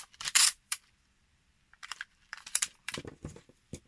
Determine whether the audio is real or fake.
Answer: fake